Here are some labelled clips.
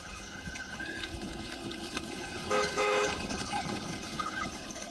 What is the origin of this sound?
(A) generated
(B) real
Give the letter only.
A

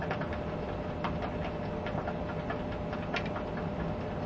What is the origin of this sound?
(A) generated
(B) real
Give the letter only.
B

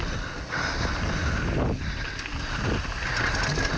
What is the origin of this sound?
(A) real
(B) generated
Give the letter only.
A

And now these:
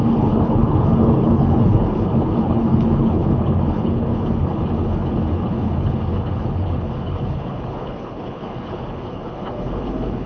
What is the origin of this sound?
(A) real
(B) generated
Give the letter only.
B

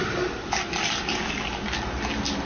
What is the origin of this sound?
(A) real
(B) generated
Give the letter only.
A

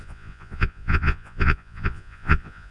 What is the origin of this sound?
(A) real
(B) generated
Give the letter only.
B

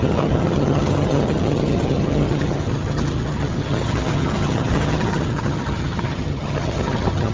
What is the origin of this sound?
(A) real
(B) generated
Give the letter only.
B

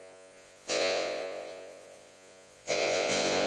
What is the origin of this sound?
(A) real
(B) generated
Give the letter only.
B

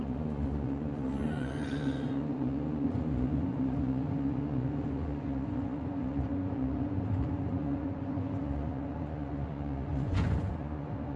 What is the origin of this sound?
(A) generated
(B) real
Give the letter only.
A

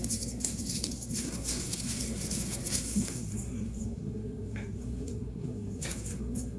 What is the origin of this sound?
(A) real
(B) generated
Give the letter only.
B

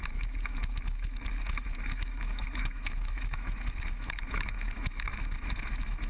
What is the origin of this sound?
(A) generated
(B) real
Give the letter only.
A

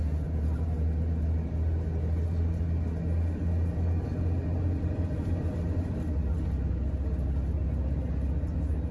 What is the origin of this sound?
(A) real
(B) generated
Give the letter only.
A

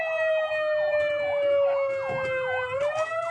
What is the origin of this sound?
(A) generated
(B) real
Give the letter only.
B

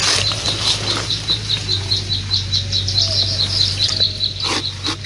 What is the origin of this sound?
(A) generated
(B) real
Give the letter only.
B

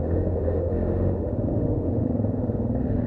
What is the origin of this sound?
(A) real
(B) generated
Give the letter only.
B